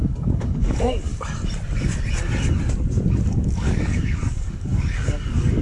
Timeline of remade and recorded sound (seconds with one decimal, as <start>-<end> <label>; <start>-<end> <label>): 0.0-1.1 remade; 1.1-3.3 recorded; 3.3-5.6 remade